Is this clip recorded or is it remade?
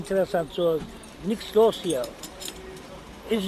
remade